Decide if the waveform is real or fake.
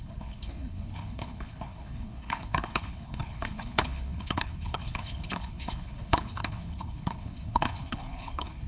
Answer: fake